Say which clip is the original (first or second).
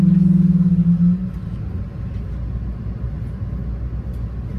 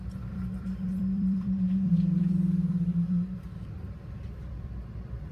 first